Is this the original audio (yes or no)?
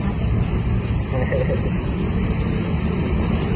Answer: yes